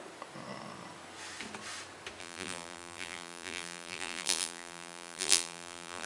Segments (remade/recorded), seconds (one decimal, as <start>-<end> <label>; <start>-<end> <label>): 0.0-2.2 recorded; 2.2-6.1 remade